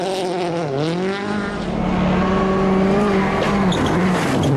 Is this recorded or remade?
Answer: recorded